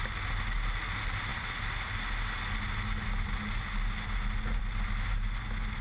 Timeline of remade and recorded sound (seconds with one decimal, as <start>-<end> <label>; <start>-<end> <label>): 0.0-5.8 recorded